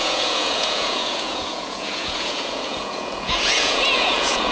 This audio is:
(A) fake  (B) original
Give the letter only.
A